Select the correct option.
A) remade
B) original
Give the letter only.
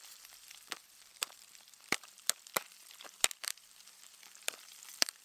A